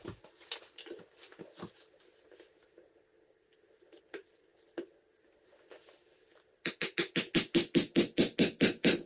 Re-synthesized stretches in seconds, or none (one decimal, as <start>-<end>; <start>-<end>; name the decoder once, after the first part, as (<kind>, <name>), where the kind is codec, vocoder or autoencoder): none